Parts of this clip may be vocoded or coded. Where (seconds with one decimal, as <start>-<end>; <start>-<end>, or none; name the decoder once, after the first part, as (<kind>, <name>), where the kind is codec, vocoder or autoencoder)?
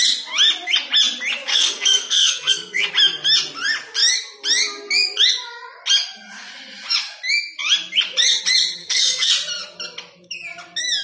1.5-2.9 (codec, SNAC); 8.8-9.3